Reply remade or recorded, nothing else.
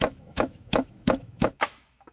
remade